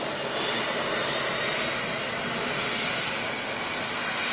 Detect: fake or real real